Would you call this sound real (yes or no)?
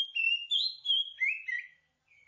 yes